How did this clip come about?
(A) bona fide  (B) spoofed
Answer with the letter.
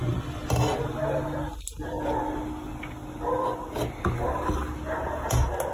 A